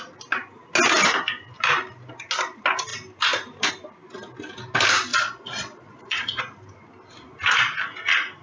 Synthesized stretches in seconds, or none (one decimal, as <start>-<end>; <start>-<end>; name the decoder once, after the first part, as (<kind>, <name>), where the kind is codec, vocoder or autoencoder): 5.1-6.4 (vocoder, Vocos)